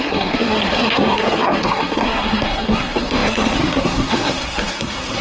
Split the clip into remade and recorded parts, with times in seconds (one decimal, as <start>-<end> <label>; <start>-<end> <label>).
0.0-5.2 remade